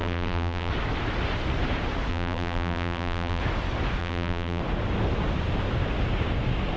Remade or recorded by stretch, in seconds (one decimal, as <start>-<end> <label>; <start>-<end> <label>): 0.0-0.7 remade; 0.7-2.1 recorded; 2.1-3.4 remade; 3.4-4.0 recorded; 4.0-4.6 remade; 4.6-6.8 recorded

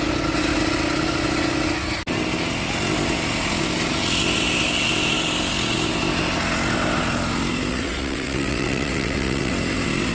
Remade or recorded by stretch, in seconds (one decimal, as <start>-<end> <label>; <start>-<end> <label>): 0.0-7.7 recorded; 7.7-9.5 remade; 9.5-10.1 recorded

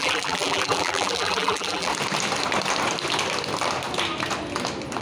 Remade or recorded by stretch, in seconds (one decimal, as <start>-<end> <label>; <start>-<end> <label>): 0.0-1.9 remade; 1.9-5.0 recorded

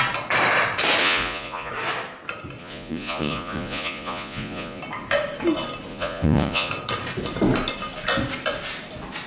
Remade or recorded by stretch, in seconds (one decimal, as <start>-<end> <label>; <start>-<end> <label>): 0.0-1.0 recorded; 1.0-1.7 remade; 1.7-2.6 recorded; 2.6-4.8 remade; 4.8-5.9 recorded; 5.9-6.7 remade; 6.7-9.3 recorded

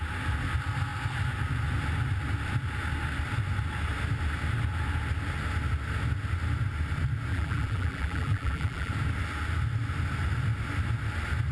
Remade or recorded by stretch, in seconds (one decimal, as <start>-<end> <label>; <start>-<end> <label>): 0.0-7.3 recorded; 7.3-8.9 remade; 8.9-11.5 recorded

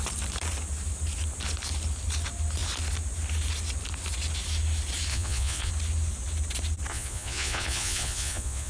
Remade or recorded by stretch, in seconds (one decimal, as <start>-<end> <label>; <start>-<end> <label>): 0.0-5.1 recorded; 5.1-5.7 remade; 5.7-6.9 recorded; 6.9-8.7 remade